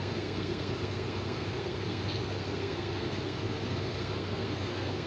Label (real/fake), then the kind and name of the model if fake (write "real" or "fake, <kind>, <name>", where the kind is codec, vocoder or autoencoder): fake, codec, SNAC